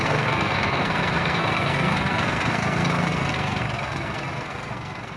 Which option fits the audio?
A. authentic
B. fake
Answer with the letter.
B